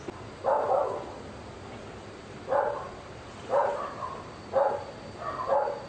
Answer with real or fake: real